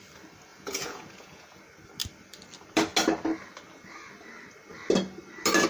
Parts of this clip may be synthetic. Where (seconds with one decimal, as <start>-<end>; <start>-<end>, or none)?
0.5-1.6